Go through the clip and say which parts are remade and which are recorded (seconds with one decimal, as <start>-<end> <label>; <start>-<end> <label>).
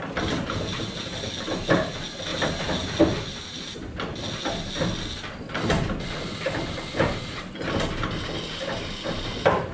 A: 0.0-9.7 recorded